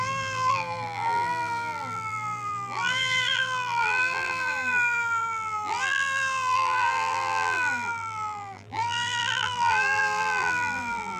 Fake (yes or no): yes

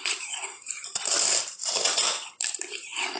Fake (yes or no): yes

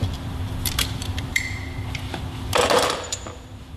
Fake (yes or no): yes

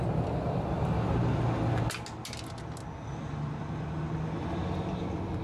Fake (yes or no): no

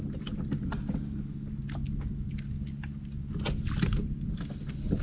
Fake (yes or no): no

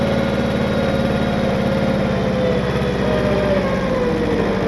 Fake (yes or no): no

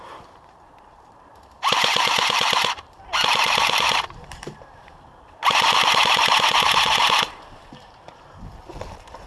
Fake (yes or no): yes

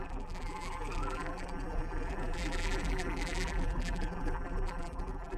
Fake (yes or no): yes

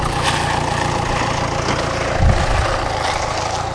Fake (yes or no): no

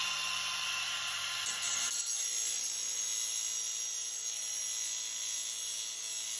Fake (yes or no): no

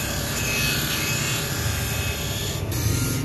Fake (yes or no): no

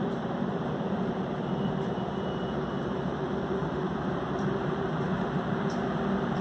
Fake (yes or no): yes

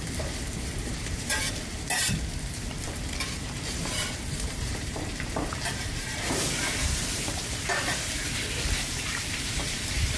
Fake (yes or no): yes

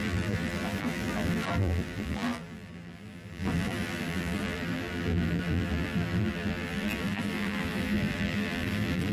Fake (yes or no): yes